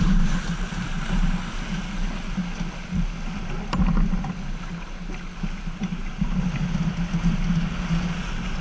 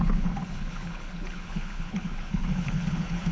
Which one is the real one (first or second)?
first